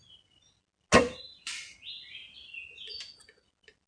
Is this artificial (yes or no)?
no